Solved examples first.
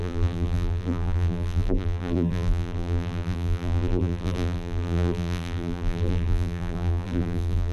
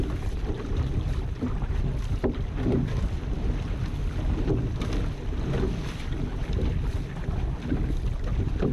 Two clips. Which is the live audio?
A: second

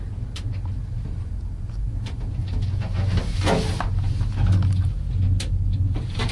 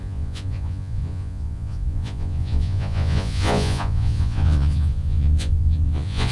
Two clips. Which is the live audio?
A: first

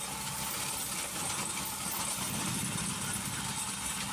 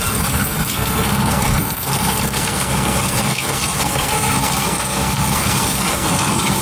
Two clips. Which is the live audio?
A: first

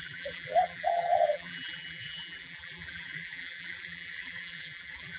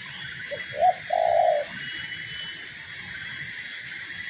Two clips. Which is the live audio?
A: second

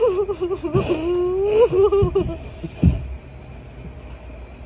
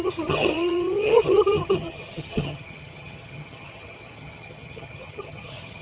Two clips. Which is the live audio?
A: first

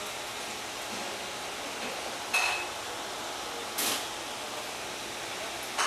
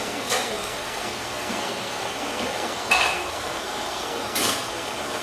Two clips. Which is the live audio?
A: first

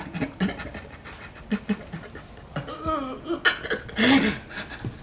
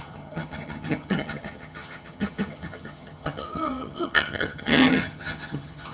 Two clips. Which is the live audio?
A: first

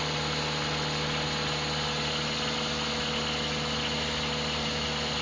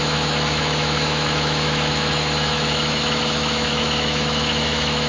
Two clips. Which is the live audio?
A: first